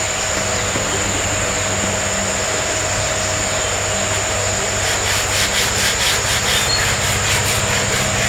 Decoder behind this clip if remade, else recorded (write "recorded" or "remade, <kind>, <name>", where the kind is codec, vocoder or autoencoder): recorded